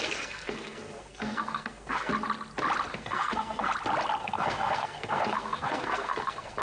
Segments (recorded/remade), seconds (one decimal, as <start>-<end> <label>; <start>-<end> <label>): 0.0-2.1 remade; 2.1-2.9 recorded; 2.9-3.7 remade; 3.7-4.2 recorded; 4.2-6.6 remade

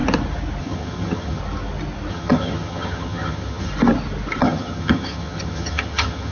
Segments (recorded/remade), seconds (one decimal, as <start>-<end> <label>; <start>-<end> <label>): 0.0-0.6 recorded; 0.6-1.4 remade; 1.4-2.1 recorded; 2.1-3.7 remade; 3.7-4.4 recorded; 4.4-6.3 remade

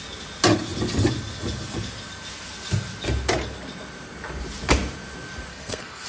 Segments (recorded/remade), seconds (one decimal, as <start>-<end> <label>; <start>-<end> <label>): 0.0-5.5 recorded; 5.5-6.1 remade

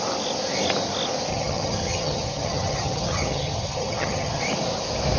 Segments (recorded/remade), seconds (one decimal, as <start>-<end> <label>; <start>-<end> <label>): 0.0-1.3 recorded; 1.3-4.4 remade; 4.4-5.2 recorded